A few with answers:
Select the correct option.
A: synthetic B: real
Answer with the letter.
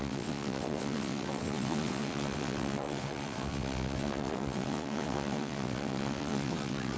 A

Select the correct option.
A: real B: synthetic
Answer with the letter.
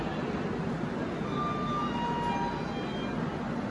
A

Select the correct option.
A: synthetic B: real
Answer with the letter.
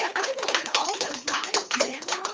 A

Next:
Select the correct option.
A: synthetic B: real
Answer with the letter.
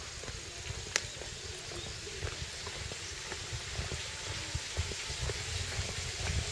B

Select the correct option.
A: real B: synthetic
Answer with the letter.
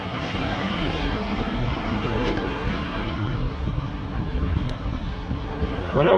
B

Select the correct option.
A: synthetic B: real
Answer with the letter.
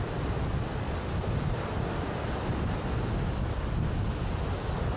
B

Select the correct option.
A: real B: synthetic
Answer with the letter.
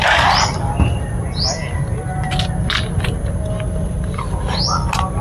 A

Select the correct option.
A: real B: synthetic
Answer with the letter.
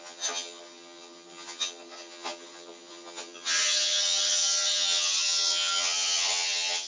B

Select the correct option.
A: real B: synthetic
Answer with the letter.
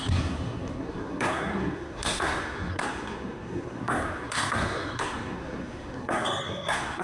B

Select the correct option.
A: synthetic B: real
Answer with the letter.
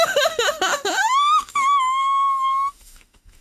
A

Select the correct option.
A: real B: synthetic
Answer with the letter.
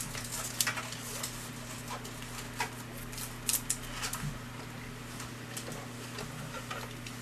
A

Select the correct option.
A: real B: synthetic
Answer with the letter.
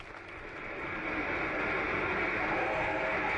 A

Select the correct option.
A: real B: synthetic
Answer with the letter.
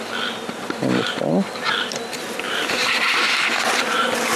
B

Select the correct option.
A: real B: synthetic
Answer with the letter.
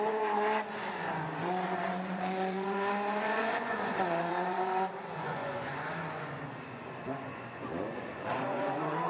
B